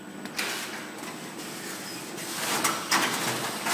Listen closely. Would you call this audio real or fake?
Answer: real